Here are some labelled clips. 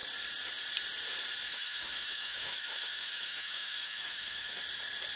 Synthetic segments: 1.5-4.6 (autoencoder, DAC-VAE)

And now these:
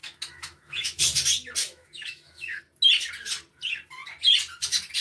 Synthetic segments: 0.0-1.0 (autoencoder, DAC-VAE); 1.6-2.6